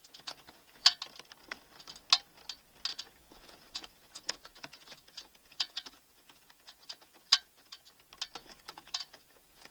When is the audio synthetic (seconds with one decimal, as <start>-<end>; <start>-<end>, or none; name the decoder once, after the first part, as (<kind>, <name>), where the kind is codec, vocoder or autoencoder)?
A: 0.0-1.0 (vocoder, Vocos); 2.9-7.9; 8.4-9.7